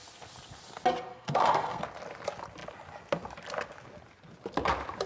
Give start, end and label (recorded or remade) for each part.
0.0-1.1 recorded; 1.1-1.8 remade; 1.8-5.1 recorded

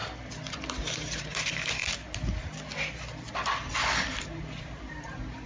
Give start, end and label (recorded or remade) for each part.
0.0-0.5 recorded; 0.5-1.8 remade; 1.8-4.6 recorded; 4.6-5.5 remade

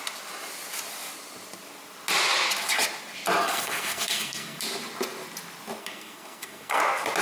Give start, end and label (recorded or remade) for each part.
0.0-3.4 recorded; 3.4-4.6 remade; 4.6-5.8 recorded; 5.8-6.8 remade; 6.8-7.2 recorded

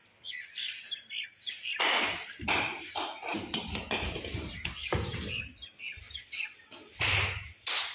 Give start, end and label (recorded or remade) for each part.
0.0-7.9 recorded

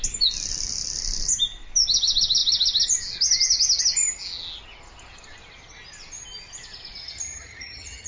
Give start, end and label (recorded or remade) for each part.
0.0-7.0 recorded; 7.0-8.1 remade

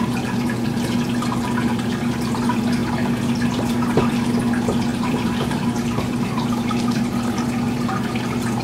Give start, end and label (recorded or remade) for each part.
0.0-4.9 recorded; 4.9-7.0 remade; 7.0-8.6 recorded